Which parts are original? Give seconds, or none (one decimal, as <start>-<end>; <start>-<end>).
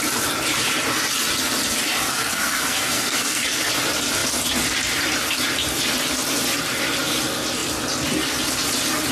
0.0-2.1; 3.7-9.1